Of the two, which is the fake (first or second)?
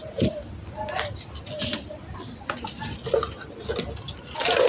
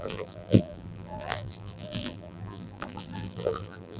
second